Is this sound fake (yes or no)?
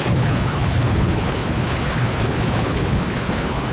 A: yes